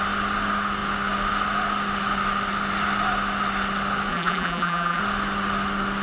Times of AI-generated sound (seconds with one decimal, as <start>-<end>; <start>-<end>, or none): 4.1-5.0